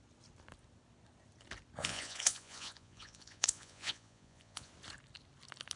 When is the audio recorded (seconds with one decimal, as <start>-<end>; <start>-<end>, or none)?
0.0-1.8; 4.7-5.8